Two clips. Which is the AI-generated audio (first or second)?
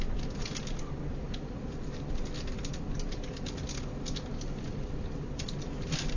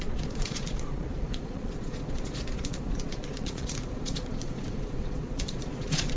second